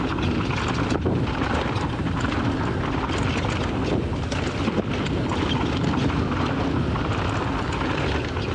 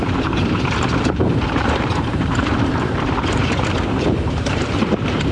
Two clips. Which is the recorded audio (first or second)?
first